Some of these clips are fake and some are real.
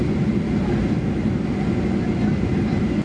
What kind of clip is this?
real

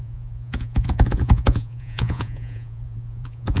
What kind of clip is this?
fake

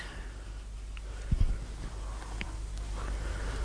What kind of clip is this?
real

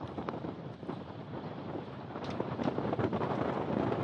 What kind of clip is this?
fake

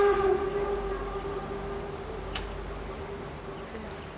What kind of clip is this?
real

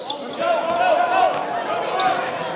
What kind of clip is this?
real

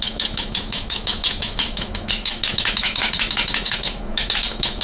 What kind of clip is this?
fake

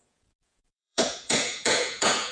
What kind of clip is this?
fake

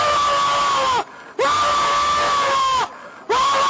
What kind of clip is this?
real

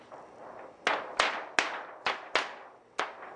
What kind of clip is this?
real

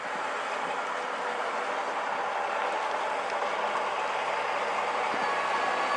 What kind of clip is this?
real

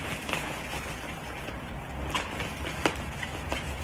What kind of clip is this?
real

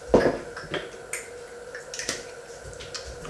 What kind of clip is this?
real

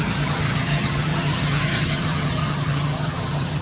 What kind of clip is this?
fake